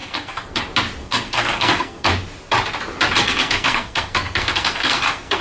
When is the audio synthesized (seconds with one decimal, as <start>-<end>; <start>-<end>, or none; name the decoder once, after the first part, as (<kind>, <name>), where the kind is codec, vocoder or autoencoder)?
0.0-0.6 (codec, SNAC); 1.0-2.1; 3.2-5.4